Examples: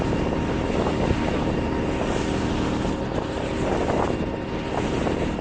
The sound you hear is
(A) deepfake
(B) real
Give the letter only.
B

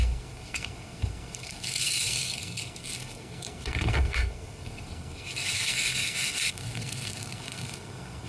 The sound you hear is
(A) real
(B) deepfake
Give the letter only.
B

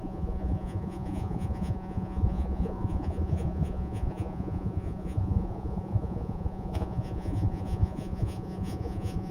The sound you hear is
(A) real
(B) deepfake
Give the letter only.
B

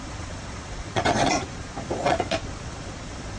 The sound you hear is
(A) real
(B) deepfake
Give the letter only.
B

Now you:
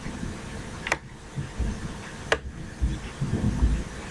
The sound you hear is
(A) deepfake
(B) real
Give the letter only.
B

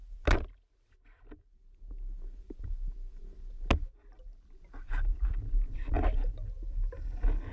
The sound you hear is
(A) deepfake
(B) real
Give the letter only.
B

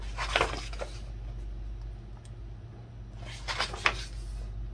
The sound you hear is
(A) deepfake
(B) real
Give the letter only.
B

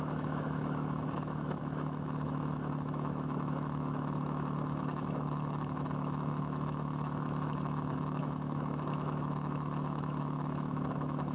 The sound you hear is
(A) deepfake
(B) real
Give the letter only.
A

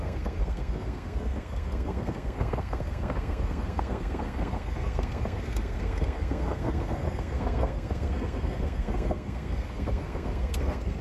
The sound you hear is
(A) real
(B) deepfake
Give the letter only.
B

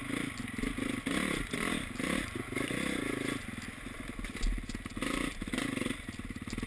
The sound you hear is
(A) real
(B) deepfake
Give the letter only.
A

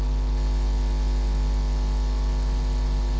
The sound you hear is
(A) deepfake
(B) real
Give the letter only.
B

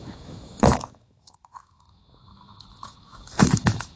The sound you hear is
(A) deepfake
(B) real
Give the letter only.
A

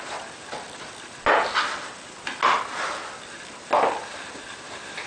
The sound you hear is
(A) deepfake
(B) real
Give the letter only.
B